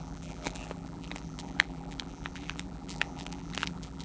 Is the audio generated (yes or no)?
yes